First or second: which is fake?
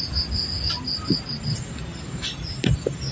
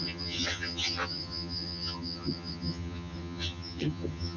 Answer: second